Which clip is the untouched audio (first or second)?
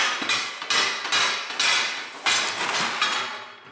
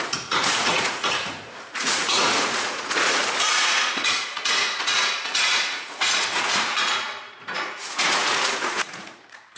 first